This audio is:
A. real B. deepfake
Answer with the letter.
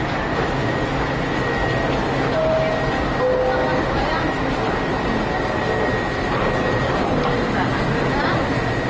A